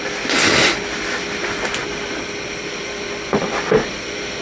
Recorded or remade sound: recorded